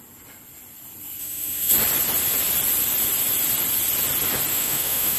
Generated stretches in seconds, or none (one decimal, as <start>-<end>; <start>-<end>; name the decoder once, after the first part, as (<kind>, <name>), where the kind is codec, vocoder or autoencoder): 1.2-1.7 (autoencoder, DAC-VAE); 4.5-5.2